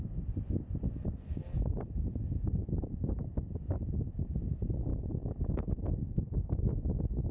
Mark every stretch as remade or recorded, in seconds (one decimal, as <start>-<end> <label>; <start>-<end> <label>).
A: 0.0-4.9 recorded; 4.9-7.3 remade